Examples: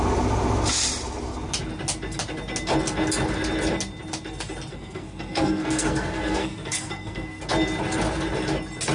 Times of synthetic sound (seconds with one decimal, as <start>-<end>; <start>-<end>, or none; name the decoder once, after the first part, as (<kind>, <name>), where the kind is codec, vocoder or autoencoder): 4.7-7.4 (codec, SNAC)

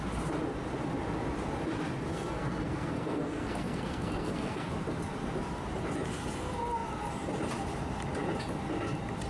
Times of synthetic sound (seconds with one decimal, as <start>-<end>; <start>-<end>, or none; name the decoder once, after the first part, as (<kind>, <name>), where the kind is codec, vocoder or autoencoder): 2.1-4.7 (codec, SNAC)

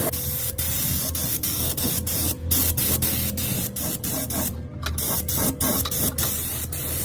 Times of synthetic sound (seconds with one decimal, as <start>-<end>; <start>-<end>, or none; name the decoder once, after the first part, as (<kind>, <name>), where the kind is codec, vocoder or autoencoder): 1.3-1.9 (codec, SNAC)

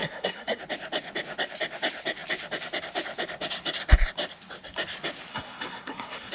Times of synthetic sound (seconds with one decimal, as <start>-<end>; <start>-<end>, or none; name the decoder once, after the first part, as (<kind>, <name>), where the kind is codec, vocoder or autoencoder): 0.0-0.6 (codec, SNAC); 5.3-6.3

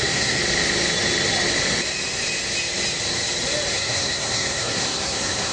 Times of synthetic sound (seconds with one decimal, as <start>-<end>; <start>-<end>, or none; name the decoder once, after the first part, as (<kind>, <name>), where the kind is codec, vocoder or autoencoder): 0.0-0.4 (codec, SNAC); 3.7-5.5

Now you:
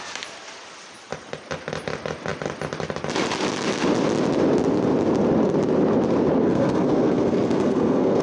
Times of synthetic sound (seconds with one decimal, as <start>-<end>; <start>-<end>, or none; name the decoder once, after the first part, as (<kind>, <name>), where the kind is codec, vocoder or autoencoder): 6.4-8.2 (codec, SNAC)

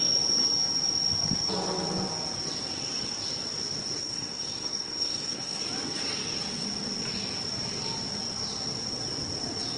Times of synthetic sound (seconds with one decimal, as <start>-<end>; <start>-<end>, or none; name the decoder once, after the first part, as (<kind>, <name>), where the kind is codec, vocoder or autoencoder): 4.0-5.6 (codec, SNAC)